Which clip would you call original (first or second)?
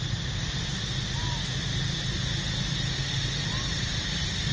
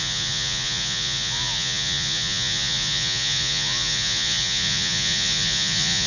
first